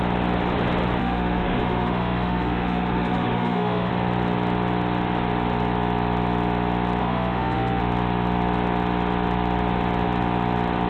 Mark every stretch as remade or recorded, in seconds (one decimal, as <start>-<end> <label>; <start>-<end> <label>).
0.0-1.0 recorded; 1.0-3.9 remade; 3.9-7.0 recorded; 7.0-7.8 remade; 7.8-10.9 recorded